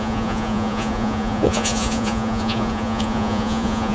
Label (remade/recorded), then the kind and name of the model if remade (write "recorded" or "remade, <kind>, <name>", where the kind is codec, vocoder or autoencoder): remade, vocoder, Vocos